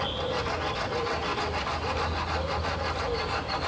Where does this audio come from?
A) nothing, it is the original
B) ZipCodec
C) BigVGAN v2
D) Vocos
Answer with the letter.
A